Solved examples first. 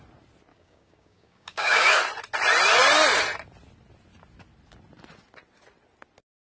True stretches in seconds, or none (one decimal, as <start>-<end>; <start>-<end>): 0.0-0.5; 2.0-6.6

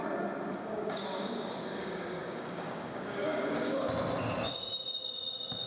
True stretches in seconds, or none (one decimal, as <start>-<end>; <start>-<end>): 0.0-0.5; 3.9-5.7

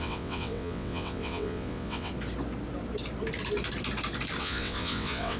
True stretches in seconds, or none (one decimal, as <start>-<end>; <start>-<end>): 2.1-4.4